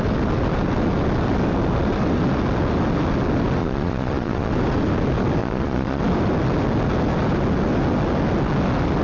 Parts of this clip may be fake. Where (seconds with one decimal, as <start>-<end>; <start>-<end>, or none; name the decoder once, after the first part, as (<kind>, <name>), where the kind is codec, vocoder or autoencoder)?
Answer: 3.6-4.5 (vocoder, Vocos); 5.4-6.0